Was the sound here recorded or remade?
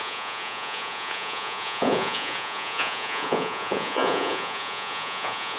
remade